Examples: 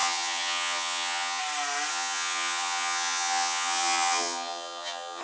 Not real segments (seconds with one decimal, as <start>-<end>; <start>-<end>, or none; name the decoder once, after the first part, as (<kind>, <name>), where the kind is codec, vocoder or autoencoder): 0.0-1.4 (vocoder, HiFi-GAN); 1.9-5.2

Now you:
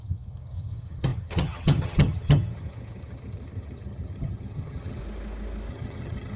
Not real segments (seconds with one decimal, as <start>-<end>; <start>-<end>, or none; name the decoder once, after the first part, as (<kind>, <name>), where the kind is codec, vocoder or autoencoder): 0.0-5.0 (vocoder, HiFi-GAN); 5.7-6.4

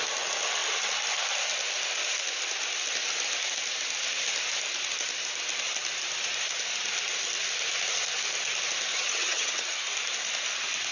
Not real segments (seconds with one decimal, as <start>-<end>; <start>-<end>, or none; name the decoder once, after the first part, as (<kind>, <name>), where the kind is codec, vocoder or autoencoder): 8.9-9.8 (vocoder, HiFi-GAN)

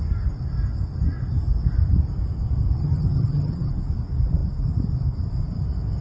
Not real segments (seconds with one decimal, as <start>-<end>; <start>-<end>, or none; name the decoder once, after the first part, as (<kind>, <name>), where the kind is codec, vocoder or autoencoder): 2.8-3.7 (vocoder, HiFi-GAN)

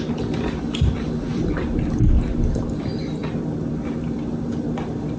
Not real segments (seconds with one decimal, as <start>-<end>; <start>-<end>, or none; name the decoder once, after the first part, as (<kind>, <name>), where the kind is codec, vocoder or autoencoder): none

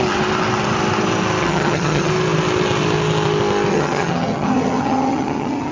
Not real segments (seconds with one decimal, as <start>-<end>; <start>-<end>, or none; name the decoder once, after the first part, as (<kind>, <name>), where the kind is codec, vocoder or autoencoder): 1.4-2.1 (vocoder, HiFi-GAN); 3.7-5.7

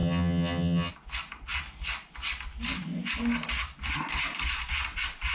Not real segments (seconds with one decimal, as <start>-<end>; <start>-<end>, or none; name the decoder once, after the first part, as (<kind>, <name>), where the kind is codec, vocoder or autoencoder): 0.0-0.9 (vocoder, HiFi-GAN)